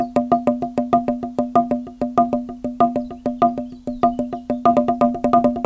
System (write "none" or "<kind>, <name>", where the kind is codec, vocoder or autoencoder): none